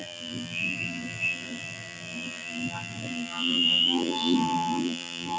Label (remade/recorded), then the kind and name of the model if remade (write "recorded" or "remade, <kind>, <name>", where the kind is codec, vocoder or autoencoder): remade, vocoder, BigVGAN v2